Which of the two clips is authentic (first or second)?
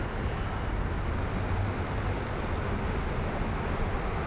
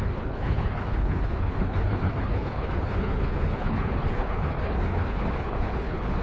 first